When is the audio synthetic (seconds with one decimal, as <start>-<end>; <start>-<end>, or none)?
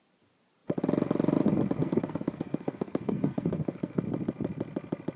1.8-4.0